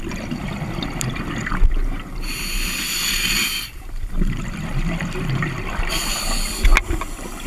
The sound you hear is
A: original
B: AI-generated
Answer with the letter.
A